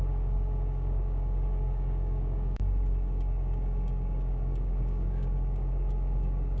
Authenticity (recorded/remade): remade